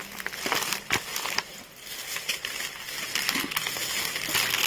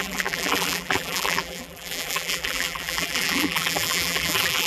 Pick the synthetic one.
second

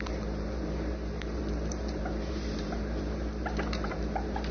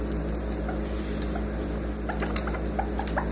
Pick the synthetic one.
first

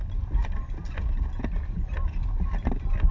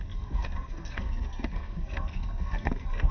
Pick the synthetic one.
second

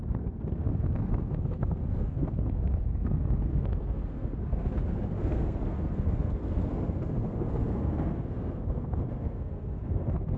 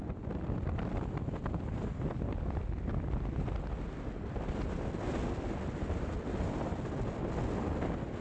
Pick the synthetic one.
first